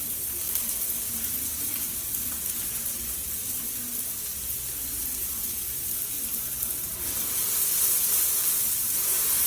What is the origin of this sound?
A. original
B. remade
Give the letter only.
A